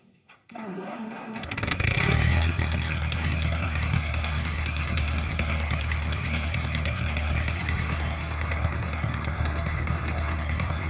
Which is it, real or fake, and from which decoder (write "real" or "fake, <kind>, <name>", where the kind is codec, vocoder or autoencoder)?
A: fake, codec, SNAC